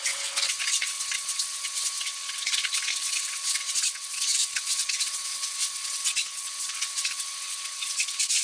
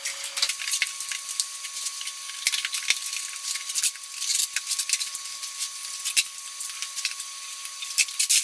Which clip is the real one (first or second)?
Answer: second